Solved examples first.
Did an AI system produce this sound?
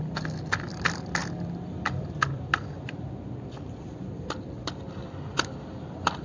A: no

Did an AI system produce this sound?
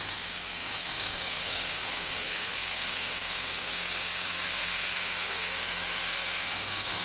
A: yes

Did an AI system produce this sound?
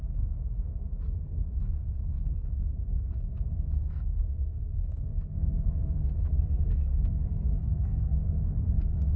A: yes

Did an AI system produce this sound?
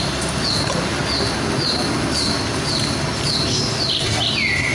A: no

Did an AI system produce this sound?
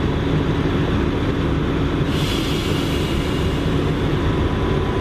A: no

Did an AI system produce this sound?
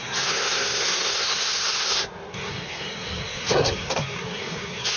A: yes